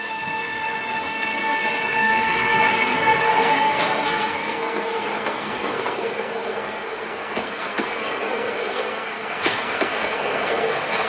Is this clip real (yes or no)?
no